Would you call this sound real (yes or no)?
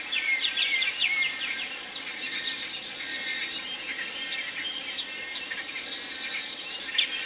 yes